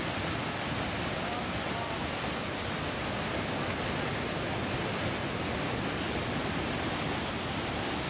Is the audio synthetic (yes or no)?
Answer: no